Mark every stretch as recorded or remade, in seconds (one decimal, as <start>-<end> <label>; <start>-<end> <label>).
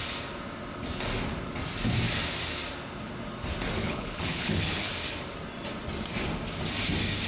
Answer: 0.0-3.8 recorded; 3.8-4.9 remade; 4.9-7.3 recorded